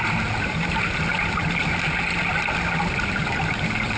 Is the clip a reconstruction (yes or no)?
no